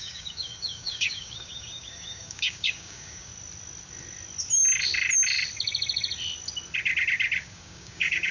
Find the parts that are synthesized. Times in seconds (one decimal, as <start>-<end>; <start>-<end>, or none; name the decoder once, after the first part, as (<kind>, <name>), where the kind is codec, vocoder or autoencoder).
0.0-3.3 (codec, DAC); 7.4-8.3